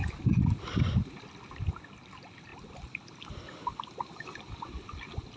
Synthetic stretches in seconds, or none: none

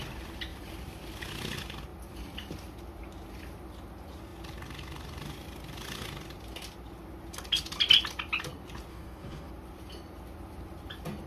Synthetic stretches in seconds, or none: 8.9-9.5 (codec, DAC)

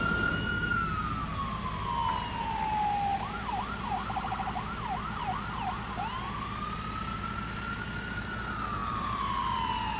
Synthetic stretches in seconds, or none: 8.8-10.0 (vocoder, BigVGAN v2)

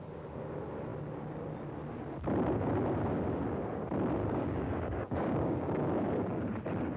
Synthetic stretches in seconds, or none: 4.2-6.5 (codec, DAC)

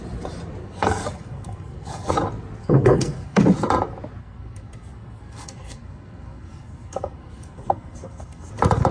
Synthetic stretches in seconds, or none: 0.6-2.1 (codec, SNAC); 2.6-3.4; 4.2-8.5

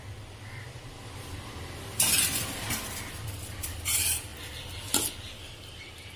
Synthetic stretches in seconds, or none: 0.0-6.2 (vocoder, BigVGAN v2)